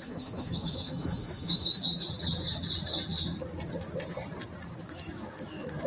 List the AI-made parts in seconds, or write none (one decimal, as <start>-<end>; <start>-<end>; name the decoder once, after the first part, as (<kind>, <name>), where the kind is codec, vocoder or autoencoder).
0.0-1.8 (autoencoder, DAC-VAE); 4.8-5.9